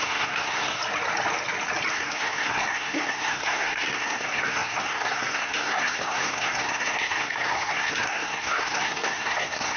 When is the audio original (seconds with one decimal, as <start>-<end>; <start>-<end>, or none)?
0.8-1.9